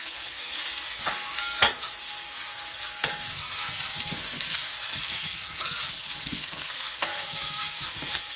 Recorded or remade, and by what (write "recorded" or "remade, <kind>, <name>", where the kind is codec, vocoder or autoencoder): remade, codec, SNAC